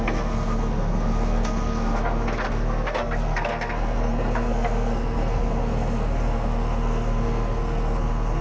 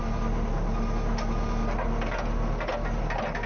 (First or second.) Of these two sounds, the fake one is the first